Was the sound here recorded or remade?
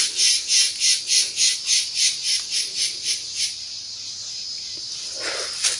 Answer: recorded